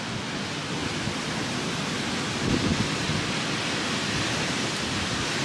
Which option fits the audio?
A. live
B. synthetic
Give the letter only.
A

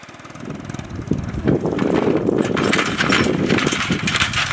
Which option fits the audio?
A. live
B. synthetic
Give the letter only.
A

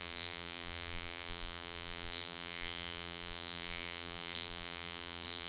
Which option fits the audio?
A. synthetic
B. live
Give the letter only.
A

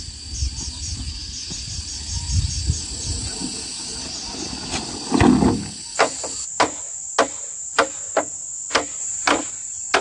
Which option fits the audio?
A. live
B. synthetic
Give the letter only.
A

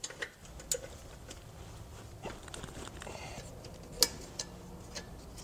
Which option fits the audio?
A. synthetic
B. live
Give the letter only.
B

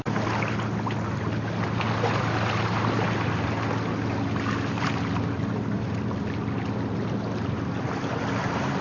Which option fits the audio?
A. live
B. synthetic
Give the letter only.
A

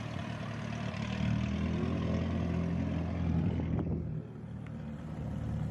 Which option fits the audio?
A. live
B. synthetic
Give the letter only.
A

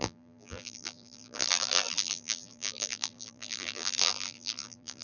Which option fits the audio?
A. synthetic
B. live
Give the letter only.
A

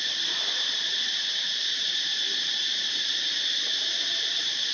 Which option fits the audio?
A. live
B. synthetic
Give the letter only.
B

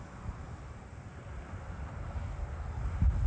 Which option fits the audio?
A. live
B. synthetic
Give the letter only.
A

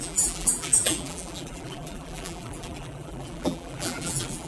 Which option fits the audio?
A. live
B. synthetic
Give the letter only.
B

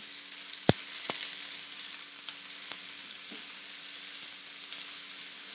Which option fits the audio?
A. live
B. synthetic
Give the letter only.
A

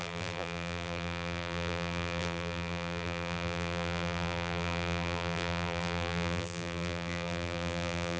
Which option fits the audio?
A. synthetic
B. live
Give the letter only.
A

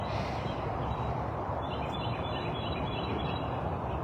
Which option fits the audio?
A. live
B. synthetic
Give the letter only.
A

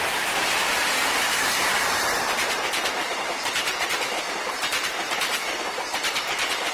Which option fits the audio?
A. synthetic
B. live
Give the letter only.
A